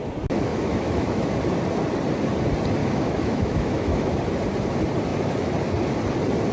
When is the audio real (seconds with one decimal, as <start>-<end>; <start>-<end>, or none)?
0.0-0.5; 1.3-2.8; 4.2-6.5